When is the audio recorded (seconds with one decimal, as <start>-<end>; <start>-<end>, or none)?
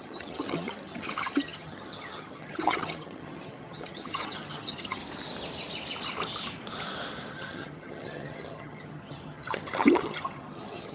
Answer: 5.0-7.3